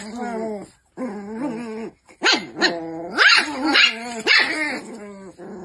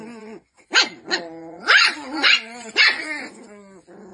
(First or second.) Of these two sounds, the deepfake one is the second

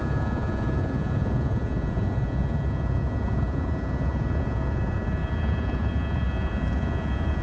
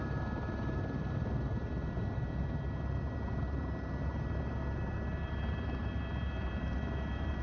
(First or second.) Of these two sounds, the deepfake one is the first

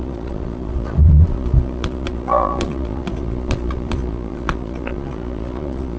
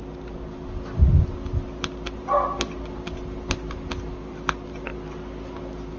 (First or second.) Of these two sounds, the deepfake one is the first